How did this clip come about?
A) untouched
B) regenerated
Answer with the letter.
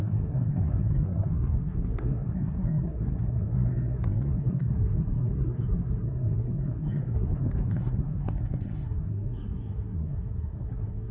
B